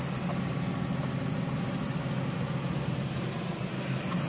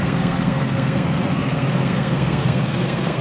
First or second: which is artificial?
second